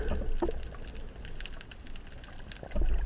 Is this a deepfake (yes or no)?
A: no